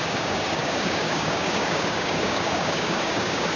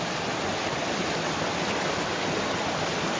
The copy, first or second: first